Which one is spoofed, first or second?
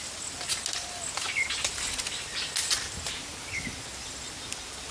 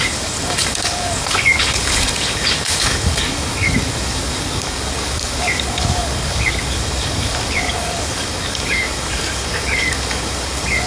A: second